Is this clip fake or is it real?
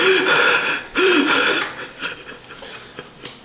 fake